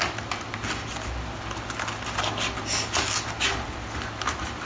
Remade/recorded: recorded